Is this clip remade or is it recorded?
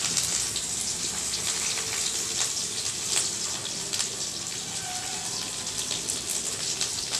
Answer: recorded